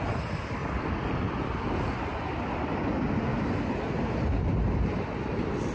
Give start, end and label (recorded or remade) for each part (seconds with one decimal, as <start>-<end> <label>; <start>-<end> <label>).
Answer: 0.0-5.7 recorded